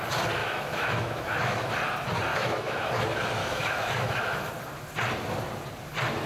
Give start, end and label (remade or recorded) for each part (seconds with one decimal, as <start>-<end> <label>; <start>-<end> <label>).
0.0-0.4 recorded; 0.4-1.7 remade; 1.7-2.3 recorded; 2.3-2.9 remade; 2.9-3.4 recorded; 3.4-4.5 remade; 4.5-6.3 recorded

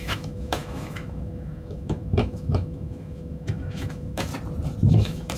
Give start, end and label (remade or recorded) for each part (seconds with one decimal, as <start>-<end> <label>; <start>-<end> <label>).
0.0-4.3 remade; 4.3-4.9 recorded; 4.9-5.4 remade